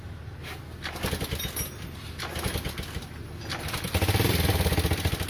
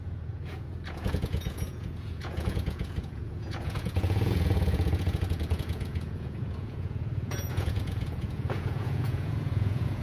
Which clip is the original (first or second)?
first